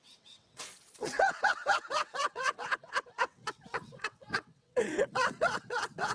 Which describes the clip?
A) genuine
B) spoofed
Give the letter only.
B